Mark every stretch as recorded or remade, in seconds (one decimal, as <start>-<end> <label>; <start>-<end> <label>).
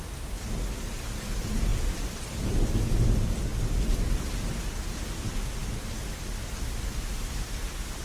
0.0-8.0 recorded